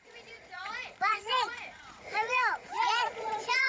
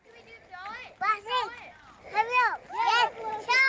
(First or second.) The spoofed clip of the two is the first